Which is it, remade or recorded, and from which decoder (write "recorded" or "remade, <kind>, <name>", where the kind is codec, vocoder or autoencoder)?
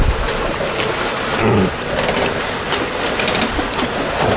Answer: recorded